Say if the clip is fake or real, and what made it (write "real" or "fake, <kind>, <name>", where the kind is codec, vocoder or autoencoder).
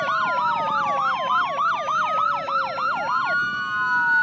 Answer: real